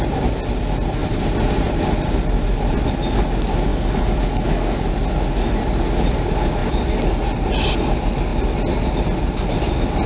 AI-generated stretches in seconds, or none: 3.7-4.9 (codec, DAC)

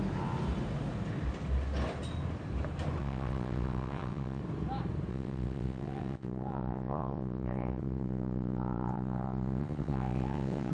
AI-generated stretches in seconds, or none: 3.0-4.4 (vocoder, WaveNeXt); 5.1-10.7

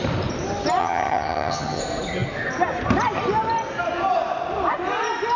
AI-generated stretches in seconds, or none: 0.8-1.8 (vocoder, HiFi-GAN)

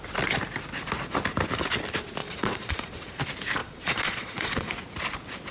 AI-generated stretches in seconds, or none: 2.2-3.2 (vocoder, Vocos); 3.6-4.7

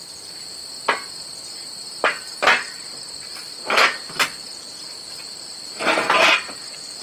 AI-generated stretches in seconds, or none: 0.0-0.6 (vocoder, BigVGAN v2); 1.8-7.0

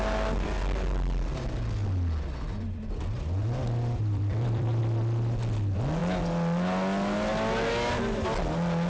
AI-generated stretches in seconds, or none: 4.0-4.8 (vocoder, BigVGAN v2)